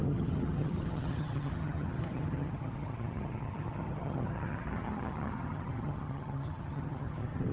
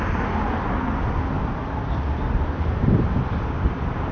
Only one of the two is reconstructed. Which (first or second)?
first